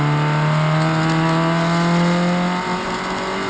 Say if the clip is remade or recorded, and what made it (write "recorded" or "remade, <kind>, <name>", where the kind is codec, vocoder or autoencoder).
recorded